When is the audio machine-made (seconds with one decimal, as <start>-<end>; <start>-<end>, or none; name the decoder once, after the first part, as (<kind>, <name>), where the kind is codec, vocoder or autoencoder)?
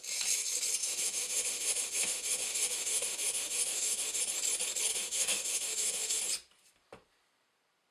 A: 0.8-4.2 (autoencoder, DAC-VAE); 4.9-6.2